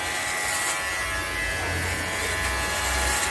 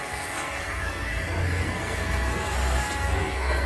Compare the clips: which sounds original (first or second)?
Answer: first